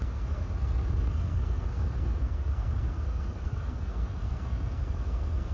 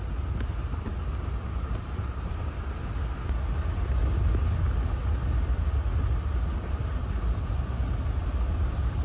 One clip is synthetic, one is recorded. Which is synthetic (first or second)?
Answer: first